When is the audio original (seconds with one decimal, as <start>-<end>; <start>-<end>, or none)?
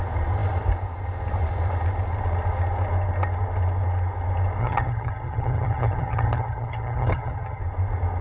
0.0-4.6; 7.6-8.2